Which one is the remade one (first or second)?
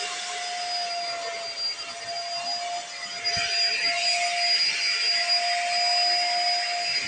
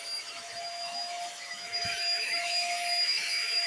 second